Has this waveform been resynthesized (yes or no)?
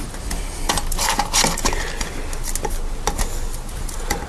no